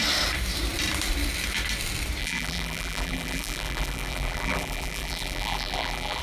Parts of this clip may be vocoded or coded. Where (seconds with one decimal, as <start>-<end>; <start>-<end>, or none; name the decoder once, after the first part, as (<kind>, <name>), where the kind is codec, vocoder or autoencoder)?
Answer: 2.2-6.2 (vocoder, BigVGAN v2)